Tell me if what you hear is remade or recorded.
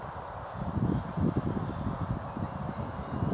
recorded